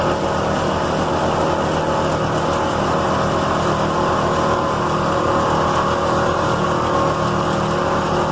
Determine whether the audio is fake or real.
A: real